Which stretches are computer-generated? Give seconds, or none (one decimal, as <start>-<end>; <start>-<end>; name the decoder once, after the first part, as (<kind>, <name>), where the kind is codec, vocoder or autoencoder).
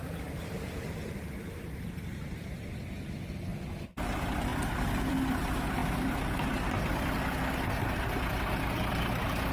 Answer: 0.0-3.5 (vocoder, BigVGAN v2); 4.0-5.8; 8.9-9.5